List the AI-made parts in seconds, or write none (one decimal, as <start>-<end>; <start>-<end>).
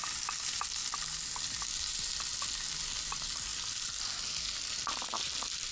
none